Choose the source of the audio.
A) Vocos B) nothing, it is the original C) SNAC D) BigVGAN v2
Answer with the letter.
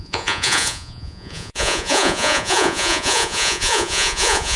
A